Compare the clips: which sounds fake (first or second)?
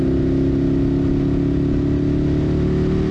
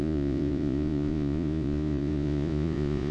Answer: second